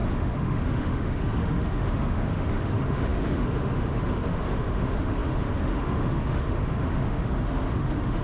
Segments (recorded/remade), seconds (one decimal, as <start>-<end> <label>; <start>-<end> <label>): 0.0-8.2 remade